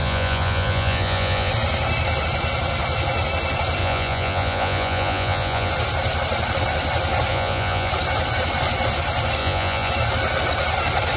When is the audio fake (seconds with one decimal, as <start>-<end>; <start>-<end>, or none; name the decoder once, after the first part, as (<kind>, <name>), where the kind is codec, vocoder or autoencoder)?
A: 0.0-1.5 (vocoder, Vocos); 3.8-5.7; 7.3-7.9; 9.4-9.9